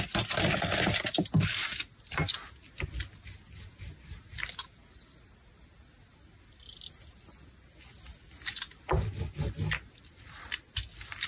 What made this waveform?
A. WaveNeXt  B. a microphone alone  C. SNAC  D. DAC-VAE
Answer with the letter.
B